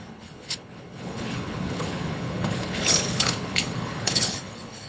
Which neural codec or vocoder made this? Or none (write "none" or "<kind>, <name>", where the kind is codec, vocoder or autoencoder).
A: codec, HILCodec